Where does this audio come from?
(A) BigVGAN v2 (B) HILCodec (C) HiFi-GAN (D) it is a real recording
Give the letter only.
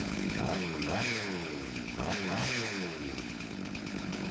B